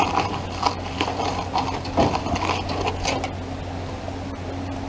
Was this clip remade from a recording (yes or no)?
no